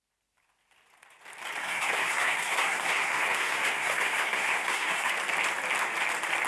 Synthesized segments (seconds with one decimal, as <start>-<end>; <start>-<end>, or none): 1.6-5.1